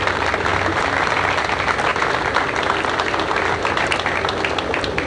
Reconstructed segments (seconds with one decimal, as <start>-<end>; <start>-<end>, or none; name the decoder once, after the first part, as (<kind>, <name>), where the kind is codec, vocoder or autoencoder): none